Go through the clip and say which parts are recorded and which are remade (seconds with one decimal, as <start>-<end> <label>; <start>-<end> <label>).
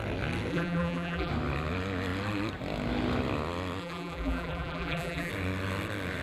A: 0.0-0.5 recorded; 0.5-1.3 remade; 1.3-3.8 recorded; 3.8-5.3 remade; 5.3-6.2 recorded